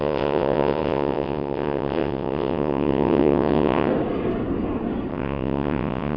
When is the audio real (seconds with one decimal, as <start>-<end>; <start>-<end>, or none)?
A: 3.9-5.1